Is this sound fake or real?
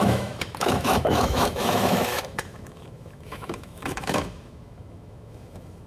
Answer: fake